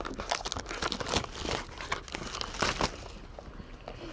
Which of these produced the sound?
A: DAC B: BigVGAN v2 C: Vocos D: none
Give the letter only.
D